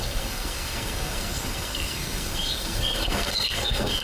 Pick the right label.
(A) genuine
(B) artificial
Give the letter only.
B